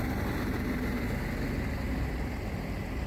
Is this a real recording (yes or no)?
yes